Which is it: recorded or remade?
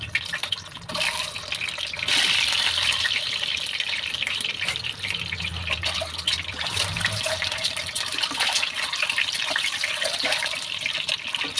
recorded